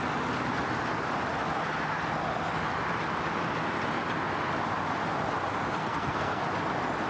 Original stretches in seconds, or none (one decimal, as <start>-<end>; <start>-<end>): 0.0-5.8; 6.4-7.1